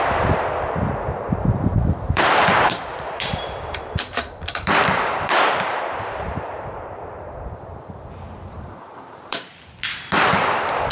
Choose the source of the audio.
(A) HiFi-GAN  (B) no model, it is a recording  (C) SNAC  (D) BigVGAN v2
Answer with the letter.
D